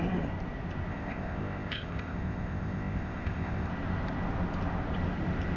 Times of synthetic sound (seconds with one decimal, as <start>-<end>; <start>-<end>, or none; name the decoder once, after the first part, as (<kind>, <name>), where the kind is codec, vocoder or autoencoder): 0.9-3.7 (codec, ZipCodec)